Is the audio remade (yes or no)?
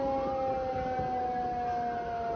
no